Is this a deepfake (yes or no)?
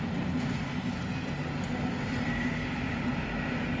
no